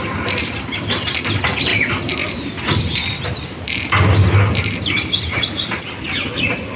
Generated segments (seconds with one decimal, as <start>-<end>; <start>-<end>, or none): none

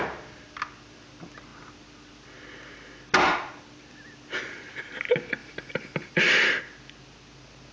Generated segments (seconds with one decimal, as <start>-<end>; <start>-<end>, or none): 5.4-6.6

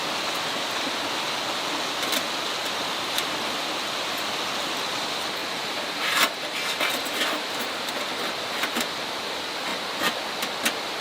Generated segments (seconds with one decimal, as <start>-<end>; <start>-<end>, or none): 2.6-3.6; 5.4-7.9

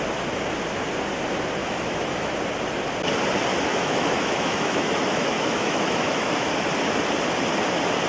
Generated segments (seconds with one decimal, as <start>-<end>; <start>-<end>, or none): 1.6-2.3; 3.5-6.3

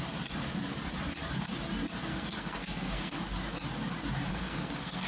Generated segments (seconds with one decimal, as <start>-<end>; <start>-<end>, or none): 2.1-3.2; 4.3-5.1

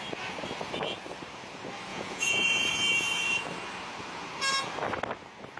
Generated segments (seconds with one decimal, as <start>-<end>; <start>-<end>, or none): 1.9-2.7